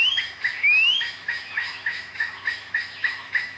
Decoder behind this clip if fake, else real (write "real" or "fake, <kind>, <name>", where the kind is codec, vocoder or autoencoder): fake, autoencoder, DAC-VAE